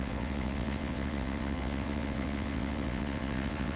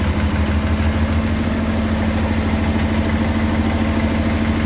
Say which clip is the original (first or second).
second